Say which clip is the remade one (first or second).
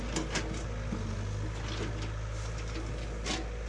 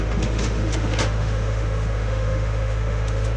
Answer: second